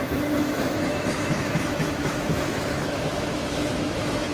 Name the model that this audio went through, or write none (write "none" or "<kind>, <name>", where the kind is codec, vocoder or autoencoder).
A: autoencoder, DAC-VAE